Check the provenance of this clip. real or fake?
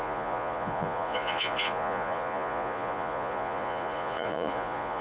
fake